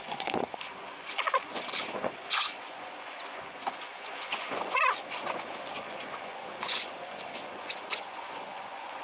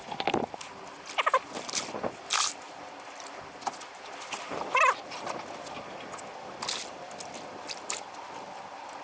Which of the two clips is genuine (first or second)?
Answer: second